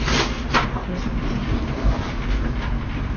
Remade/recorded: recorded